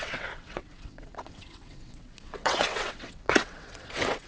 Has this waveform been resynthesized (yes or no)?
yes